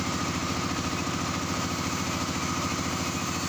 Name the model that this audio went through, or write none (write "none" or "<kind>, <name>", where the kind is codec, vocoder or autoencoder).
vocoder, BigVGAN v2